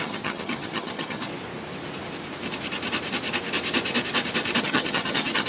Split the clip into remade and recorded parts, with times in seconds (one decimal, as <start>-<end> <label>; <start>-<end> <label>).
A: 0.0-1.3 remade; 1.3-4.6 recorded; 4.6-5.5 remade